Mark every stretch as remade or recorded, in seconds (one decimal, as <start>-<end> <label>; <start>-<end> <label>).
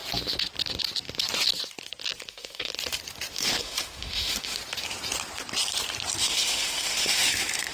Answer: 0.0-2.3 recorded; 2.3-2.7 remade; 2.7-3.3 recorded; 3.3-4.6 remade; 4.6-6.2 recorded; 6.2-7.7 remade